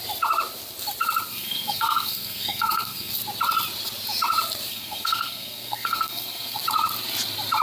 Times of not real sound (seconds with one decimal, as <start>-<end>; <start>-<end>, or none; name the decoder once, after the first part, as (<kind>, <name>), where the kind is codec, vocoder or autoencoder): 1.3-3.1 (codec, SNAC); 4.7-6.6